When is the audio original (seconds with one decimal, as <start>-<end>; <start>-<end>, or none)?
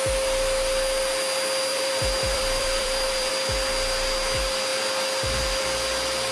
0.0-1.7; 3.3-6.3